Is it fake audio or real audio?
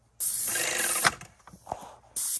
real